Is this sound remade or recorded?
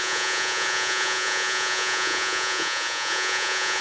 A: remade